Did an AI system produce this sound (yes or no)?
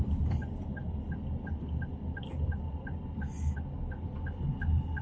no